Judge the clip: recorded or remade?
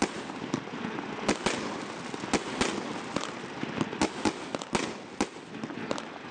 recorded